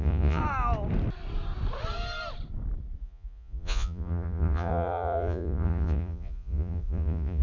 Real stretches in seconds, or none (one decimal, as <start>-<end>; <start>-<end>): 0.4-3.0